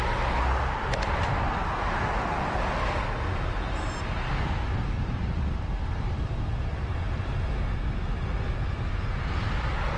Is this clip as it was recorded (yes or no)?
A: yes